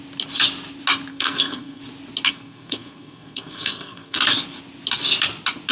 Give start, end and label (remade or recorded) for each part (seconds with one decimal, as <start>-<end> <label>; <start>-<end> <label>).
0.0-1.1 recorded; 1.1-1.8 remade; 1.8-2.3 recorded; 2.3-4.2 remade; 4.2-5.7 recorded